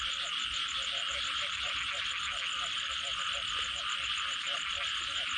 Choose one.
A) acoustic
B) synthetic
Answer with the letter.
B